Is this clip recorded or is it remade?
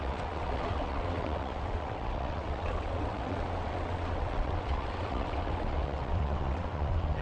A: remade